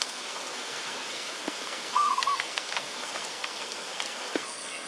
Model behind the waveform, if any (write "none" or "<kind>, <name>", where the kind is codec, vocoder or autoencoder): codec, SNAC